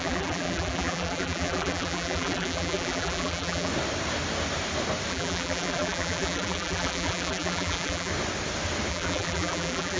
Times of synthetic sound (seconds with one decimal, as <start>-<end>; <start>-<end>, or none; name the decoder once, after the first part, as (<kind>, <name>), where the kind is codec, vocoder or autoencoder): 0.0-3.7 (vocoder, BigVGAN v2); 5.1-8.1; 8.9-10.0